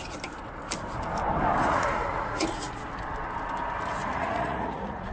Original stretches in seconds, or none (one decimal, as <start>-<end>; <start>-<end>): 0.0-1.6; 2.7-4.0